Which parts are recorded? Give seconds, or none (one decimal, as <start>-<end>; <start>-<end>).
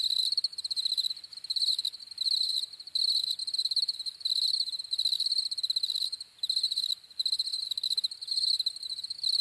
0.0-9.4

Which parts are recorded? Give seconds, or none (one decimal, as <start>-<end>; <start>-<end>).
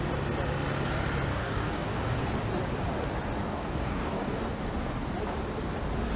0.0-1.3; 2.2-3.4; 4.6-6.2